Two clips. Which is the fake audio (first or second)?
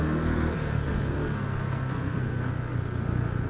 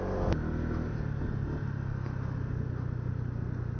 first